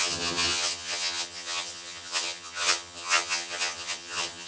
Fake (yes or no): yes